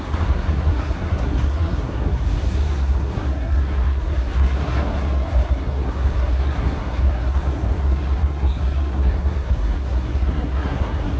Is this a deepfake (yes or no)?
yes